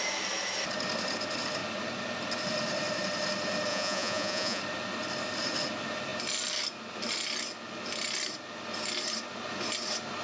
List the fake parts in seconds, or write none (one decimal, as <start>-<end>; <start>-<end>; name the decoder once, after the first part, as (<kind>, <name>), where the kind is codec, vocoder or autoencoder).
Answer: 3.7-4.6 (vocoder, Vocos)